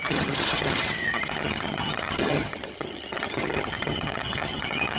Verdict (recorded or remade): remade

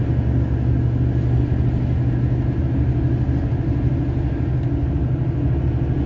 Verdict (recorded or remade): recorded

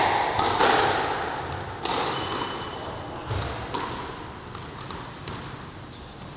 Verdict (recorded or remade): recorded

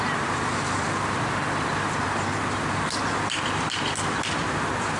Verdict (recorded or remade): recorded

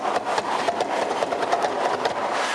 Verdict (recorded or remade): recorded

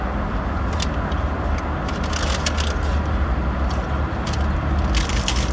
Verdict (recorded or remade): recorded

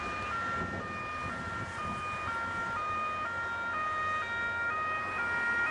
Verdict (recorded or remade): recorded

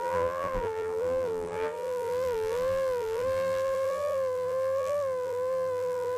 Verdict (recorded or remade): remade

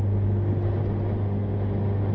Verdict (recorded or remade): recorded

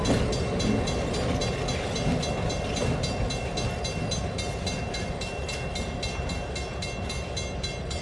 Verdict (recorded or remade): recorded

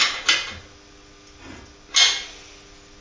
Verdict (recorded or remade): recorded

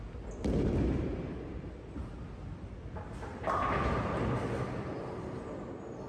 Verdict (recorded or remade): recorded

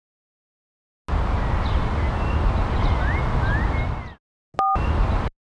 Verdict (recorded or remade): recorded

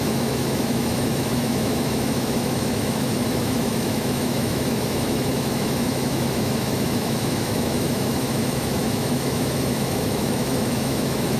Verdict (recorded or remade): remade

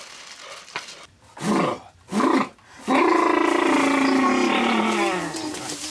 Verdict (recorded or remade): recorded